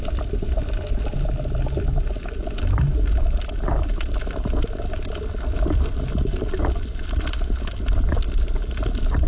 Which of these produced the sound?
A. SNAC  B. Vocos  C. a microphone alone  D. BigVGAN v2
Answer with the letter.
C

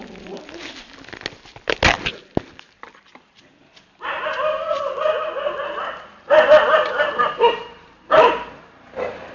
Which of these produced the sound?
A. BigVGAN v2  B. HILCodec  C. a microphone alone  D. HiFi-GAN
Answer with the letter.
C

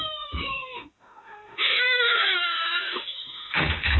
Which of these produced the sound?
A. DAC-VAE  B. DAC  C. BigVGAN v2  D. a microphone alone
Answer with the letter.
A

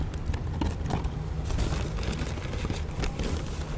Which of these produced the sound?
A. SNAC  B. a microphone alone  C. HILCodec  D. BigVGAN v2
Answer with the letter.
B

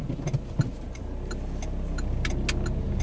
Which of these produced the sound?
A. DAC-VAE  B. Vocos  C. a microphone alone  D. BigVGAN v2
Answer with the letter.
C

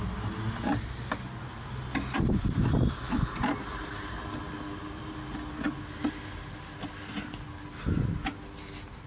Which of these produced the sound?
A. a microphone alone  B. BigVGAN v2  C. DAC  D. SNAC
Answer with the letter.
A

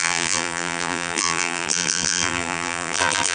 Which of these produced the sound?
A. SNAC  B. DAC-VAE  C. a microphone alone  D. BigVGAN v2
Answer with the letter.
D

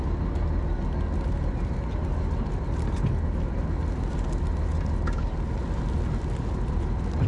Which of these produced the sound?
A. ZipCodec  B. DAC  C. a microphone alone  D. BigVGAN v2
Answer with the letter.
C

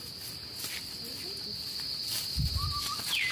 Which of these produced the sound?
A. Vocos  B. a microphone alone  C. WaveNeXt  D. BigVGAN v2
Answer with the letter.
B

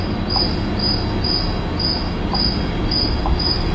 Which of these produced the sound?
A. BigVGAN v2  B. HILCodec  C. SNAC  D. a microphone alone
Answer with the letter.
D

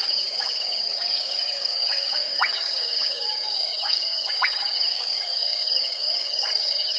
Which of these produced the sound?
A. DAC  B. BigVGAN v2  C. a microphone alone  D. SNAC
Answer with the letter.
A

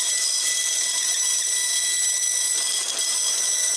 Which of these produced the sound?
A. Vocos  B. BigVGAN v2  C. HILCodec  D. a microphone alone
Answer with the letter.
D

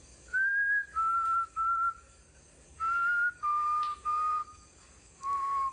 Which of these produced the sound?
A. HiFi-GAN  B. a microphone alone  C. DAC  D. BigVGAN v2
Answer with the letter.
C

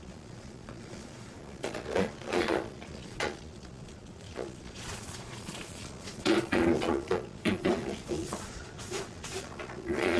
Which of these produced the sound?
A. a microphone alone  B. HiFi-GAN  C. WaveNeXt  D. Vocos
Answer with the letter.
D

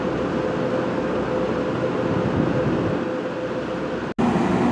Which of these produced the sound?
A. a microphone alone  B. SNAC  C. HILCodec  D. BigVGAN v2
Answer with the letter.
A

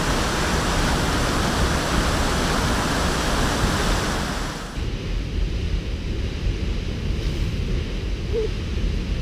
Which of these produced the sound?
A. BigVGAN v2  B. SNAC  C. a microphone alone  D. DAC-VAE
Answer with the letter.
C